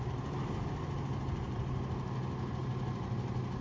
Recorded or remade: recorded